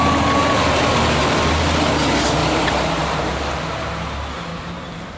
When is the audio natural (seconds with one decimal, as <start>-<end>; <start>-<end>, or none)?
0.0-2.4; 3.5-4.5

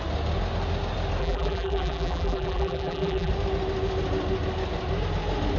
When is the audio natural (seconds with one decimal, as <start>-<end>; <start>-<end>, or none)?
0.0-1.2; 3.3-5.6

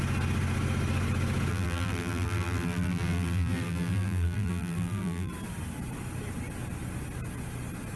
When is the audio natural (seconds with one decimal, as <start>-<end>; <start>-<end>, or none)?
0.0-1.5; 5.3-8.0